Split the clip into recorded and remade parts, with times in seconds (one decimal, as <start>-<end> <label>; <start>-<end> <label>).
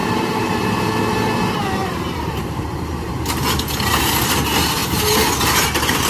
0.0-0.8 remade; 0.8-1.8 recorded; 1.8-3.2 remade; 3.2-6.1 recorded